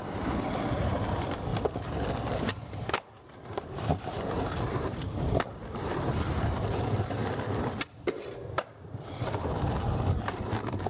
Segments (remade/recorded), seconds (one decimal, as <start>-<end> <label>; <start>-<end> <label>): 0.0-1.5 remade; 1.5-2.3 recorded; 2.3-7.2 remade; 7.2-8.1 recorded; 8.1-10.9 remade